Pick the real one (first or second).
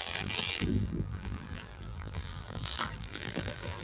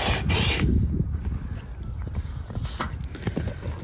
second